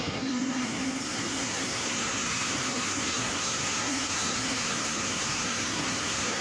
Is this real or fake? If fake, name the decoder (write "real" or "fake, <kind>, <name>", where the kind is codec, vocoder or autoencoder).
fake, codec, SNAC